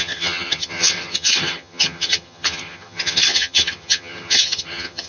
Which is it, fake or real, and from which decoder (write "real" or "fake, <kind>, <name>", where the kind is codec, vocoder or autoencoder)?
fake, vocoder, HiFi-GAN